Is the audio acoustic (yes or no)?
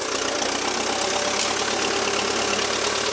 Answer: yes